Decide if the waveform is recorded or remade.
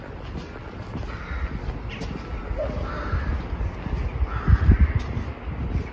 recorded